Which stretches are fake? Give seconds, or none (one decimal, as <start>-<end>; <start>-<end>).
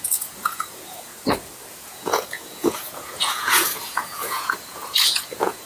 0.0-1.1; 1.7-5.7